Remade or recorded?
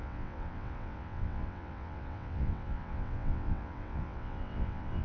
remade